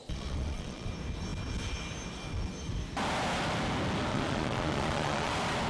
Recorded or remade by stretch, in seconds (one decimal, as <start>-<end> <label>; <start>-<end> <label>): 0.0-0.9 remade; 0.9-4.1 recorded; 4.1-5.3 remade; 5.3-5.7 recorded